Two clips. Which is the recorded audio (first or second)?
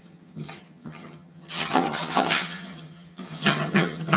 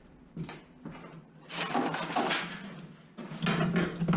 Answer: second